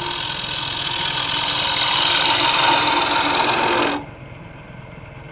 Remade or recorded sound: recorded